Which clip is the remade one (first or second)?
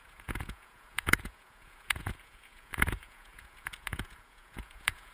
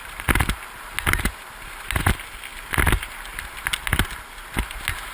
first